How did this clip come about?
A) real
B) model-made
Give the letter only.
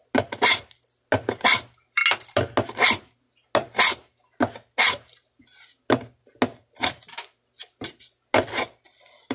A